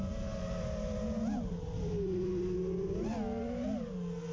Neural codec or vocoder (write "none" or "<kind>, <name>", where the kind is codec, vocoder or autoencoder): none